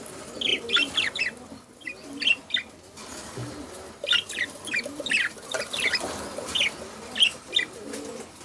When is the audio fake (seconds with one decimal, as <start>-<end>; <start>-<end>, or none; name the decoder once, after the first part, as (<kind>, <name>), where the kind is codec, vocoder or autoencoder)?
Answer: 0.5-1.2 (vocoder, BigVGAN v2); 3.4-6.3